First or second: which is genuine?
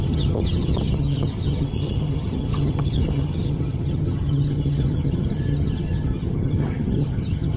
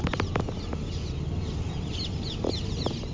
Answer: second